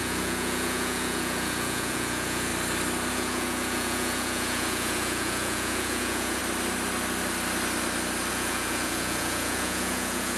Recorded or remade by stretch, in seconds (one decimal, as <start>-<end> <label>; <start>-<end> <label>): 0.0-2.5 remade; 2.5-3.1 recorded; 3.1-6.4 remade; 6.4-8.3 recorded; 8.3-10.4 remade